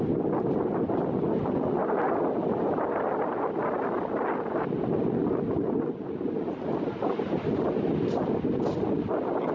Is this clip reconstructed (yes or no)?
no